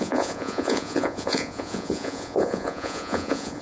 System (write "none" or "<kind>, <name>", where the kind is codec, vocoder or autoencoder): vocoder, Vocos